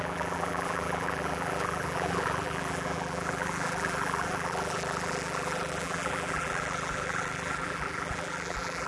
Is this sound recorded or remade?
remade